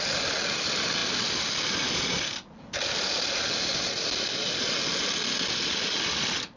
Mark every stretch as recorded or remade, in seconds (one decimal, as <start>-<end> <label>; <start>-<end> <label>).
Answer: 0.0-6.6 recorded